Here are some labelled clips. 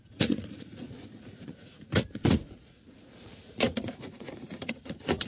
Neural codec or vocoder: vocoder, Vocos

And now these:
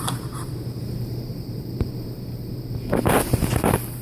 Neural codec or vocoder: vocoder, BigVGAN v2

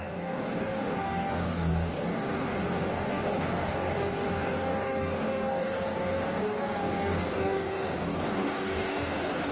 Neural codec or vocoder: codec, DAC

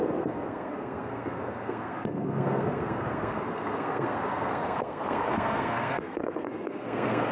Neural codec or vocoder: codec, SNAC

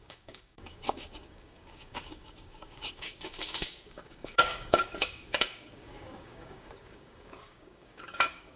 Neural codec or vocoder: codec, DAC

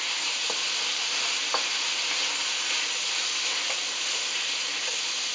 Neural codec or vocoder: none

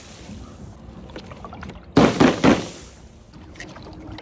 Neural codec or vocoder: none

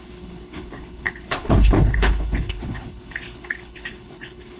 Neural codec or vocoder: codec, HILCodec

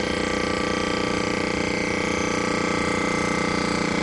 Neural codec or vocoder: none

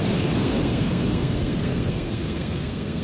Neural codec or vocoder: codec, SNAC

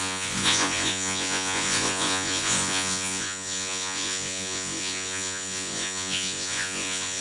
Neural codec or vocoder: vocoder, Vocos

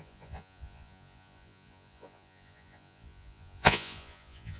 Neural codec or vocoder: vocoder, Vocos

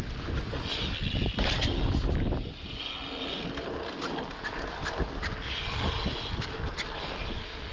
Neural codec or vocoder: none